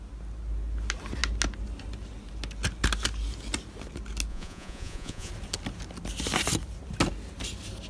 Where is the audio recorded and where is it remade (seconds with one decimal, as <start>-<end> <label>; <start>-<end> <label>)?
0.0-4.3 recorded; 4.3-5.3 remade; 5.3-7.9 recorded